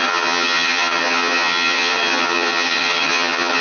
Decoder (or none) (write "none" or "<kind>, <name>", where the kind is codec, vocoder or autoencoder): vocoder, HiFi-GAN